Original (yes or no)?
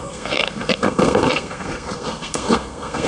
no